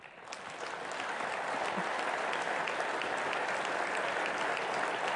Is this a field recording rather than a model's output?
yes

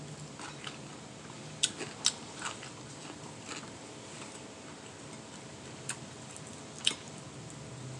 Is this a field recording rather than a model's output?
yes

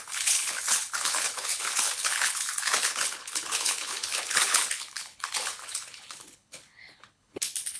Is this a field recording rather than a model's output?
no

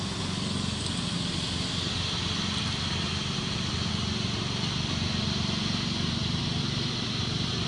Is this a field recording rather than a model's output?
yes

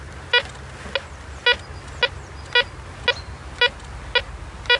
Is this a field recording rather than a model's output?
yes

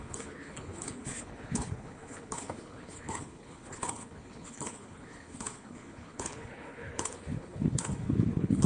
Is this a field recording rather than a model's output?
no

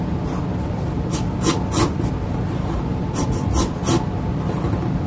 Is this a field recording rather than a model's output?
yes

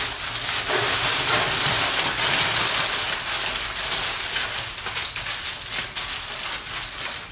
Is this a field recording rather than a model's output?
yes